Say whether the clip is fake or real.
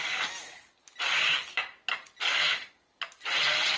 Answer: real